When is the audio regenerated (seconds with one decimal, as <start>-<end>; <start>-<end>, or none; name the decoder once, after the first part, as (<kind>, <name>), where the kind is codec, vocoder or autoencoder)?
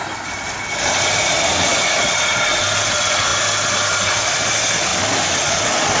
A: none